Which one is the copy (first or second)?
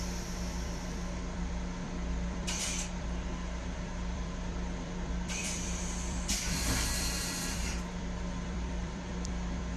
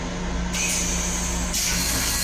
first